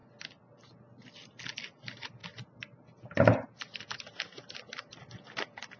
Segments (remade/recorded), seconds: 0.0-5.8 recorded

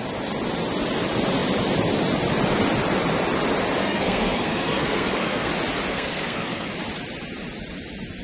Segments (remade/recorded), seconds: 0.0-3.8 recorded; 3.8-5.5 remade; 5.5-5.9 recorded; 5.9-6.7 remade; 6.7-8.2 recorded

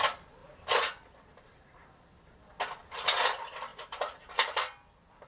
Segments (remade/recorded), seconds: 0.0-0.4 recorded; 0.4-1.9 remade; 1.9-3.7 recorded; 3.7-4.6 remade; 4.6-5.3 recorded

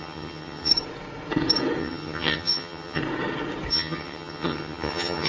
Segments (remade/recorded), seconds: 0.0-0.7 remade; 0.7-1.8 recorded; 1.8-3.0 remade; 3.0-3.7 recorded; 3.7-5.3 remade

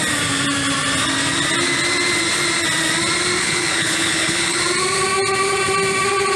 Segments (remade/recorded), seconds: 0.0-3.4 recorded; 3.4-4.6 remade; 4.6-6.4 recorded

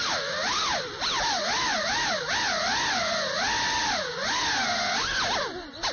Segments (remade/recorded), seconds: 0.0-0.7 recorded; 0.7-4.2 remade; 4.2-5.9 recorded

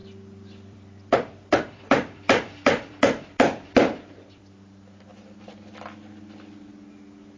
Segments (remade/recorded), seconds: 0.0-4.4 remade; 4.4-7.4 recorded

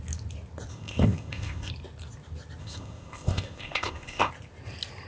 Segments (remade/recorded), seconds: 0.0-0.7 recorded; 0.7-1.7 remade; 1.7-2.6 recorded; 2.6-4.3 remade; 4.3-5.1 recorded